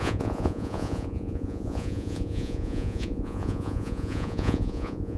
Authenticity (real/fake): fake